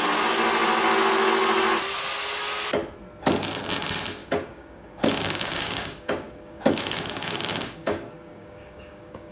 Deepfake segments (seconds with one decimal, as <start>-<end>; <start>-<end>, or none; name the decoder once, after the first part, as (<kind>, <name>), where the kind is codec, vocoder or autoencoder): 4.2-9.3 (codec, DAC)